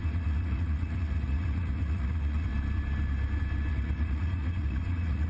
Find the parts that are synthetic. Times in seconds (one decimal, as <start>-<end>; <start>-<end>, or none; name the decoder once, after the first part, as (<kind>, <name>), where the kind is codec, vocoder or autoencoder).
0.0-2.5 (vocoder, Vocos); 3.7-5.3